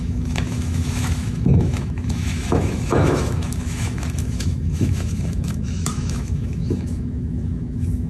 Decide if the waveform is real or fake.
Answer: fake